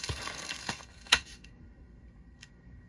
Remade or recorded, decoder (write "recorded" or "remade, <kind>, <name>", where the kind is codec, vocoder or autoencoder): remade, codec, SNAC